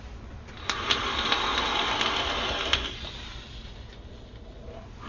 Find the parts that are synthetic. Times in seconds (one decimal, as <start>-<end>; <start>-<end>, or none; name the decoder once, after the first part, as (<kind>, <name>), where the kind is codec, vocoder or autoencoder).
none

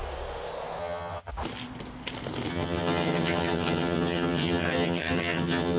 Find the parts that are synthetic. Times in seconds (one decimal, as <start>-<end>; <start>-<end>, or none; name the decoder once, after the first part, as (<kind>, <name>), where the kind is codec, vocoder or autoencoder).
0.8-1.3 (vocoder, HiFi-GAN); 2.5-5.8

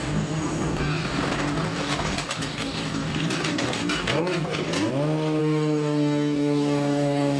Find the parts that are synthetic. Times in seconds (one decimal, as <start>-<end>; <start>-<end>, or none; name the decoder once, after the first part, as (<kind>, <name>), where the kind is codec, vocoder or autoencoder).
0.0-4.9 (codec, DAC); 5.4-7.4

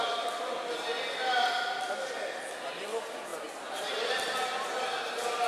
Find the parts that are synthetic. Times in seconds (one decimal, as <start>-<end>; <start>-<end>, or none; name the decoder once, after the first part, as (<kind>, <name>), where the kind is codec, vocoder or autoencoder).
3.3-4.4 (vocoder, BigVGAN v2)

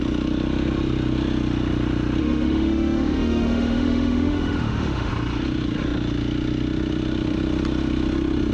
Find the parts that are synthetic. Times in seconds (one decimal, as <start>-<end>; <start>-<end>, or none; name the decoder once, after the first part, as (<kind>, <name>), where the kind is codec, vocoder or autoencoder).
2.2-5.1 (autoencoder, DAC-VAE)

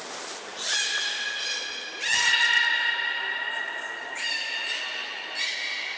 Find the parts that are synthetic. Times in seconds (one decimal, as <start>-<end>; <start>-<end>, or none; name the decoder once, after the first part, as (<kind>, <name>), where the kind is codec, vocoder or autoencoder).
none

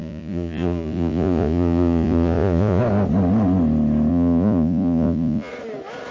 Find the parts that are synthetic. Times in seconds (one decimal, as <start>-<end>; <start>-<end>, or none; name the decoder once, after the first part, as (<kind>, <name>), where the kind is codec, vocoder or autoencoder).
0.0-2.8 (vocoder, Vocos); 4.1-5.5

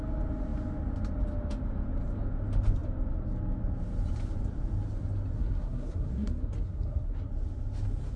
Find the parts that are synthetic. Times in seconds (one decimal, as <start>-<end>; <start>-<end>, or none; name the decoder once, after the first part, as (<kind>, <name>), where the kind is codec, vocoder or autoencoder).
5.4-7.3 (codec, SNAC)